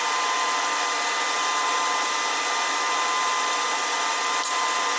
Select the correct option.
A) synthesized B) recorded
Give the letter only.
B